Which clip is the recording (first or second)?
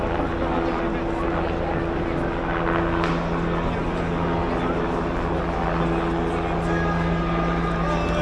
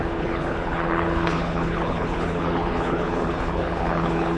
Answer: first